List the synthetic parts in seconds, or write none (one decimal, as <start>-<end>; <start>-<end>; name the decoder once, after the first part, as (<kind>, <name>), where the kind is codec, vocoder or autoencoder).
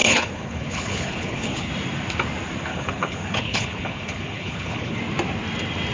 0.0-1.7 (codec, HILCodec); 2.7-5.0